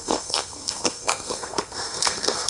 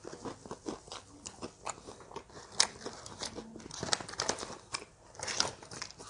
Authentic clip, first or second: second